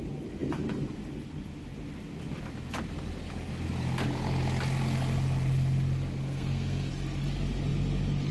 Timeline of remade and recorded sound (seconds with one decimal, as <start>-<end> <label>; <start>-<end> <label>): 0.0-6.2 recorded; 6.2-6.9 remade; 6.9-8.3 recorded